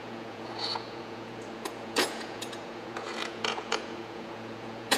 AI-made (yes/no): yes